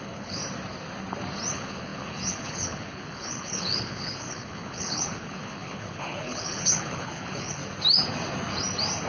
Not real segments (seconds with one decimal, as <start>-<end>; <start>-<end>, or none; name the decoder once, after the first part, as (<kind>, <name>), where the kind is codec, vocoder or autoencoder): 0.0-0.4 (codec, HILCodec); 1.5-7.6